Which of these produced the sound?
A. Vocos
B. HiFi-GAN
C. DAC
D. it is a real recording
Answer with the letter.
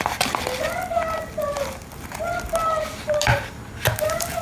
D